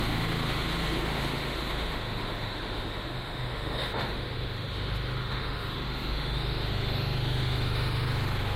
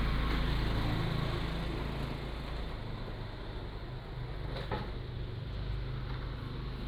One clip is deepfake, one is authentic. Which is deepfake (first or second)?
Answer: first